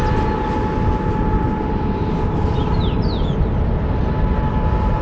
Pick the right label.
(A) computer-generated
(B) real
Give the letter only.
B